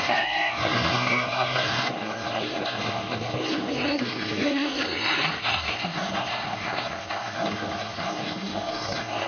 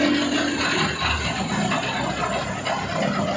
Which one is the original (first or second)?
second